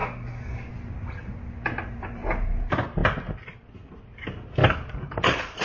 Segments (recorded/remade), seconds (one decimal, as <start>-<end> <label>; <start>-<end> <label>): 0.0-0.7 remade; 0.7-4.6 recorded; 4.6-5.6 remade